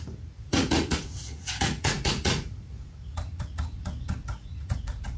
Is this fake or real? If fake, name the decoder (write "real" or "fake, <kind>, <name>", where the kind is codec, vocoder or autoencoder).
fake, vocoder, Vocos